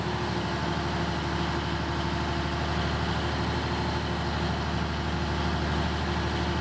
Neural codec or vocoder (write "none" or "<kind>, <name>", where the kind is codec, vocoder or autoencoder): none